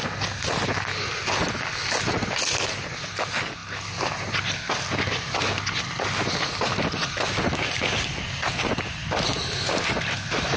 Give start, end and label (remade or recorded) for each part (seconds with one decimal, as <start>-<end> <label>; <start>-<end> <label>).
0.0-10.6 recorded